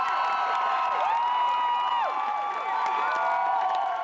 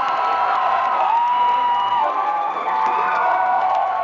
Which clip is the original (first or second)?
first